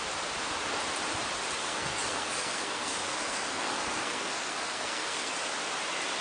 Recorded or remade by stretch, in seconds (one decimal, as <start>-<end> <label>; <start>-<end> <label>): 0.0-1.6 recorded; 1.6-5.3 remade; 5.3-6.2 recorded